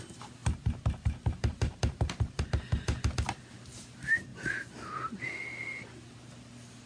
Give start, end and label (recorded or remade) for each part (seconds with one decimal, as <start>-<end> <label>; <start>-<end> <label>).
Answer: 0.0-0.4 recorded; 0.4-2.4 remade; 2.4-4.3 recorded; 4.3-4.9 remade; 4.9-6.9 recorded